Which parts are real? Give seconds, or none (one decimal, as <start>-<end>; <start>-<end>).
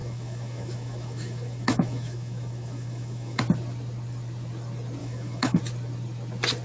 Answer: 3.4-5.0; 5.6-6.6